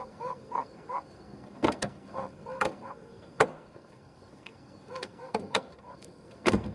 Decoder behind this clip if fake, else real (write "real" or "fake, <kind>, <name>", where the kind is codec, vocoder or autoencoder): fake, codec, SNAC